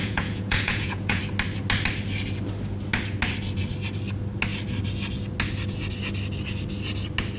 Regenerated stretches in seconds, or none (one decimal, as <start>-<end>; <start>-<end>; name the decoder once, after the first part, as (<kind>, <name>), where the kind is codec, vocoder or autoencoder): 0.0-1.2 (vocoder, Vocos)